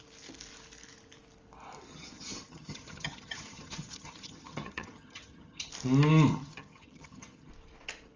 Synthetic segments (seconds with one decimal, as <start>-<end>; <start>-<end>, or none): 1.9-5.7; 6.3-7.5